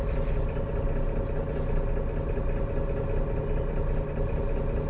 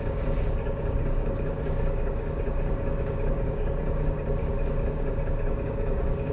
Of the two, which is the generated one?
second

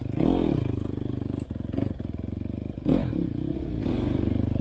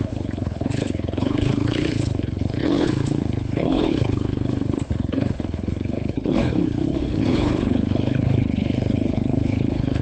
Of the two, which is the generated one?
second